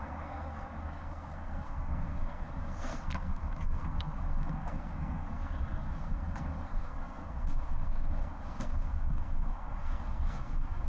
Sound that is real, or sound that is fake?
fake